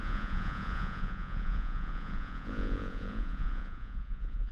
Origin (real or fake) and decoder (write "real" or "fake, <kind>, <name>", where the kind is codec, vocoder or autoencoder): fake, vocoder, Vocos